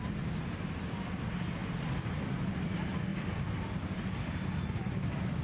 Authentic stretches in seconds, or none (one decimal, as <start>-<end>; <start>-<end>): 0.0-1.6; 2.2-3.1